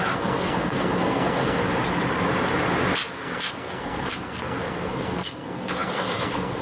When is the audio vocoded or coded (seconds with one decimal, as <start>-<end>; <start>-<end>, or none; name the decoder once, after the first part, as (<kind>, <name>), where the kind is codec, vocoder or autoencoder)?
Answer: 0.0-1.6 (codec, SNAC); 3.1-6.6